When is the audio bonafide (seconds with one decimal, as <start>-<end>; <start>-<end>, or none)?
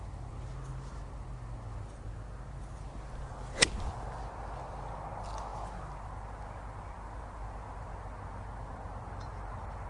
0.0-9.9